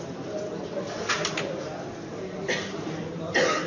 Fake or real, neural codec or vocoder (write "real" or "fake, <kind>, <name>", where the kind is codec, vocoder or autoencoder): real